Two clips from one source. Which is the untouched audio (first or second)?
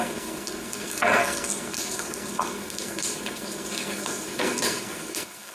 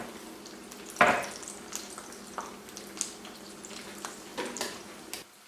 second